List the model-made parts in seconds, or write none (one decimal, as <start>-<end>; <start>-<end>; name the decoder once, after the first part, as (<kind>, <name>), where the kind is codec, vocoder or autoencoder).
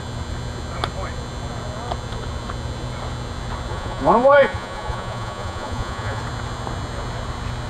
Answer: 3.7-6.2 (vocoder, Vocos)